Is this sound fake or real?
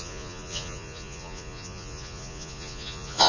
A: fake